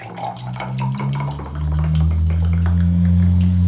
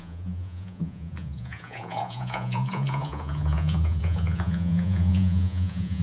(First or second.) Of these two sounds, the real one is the first